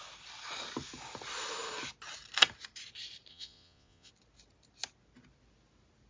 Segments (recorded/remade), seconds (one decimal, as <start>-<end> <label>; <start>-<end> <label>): 0.0-3.3 recorded; 3.3-4.1 remade; 4.1-6.1 recorded